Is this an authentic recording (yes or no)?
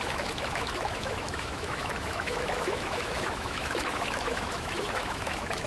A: no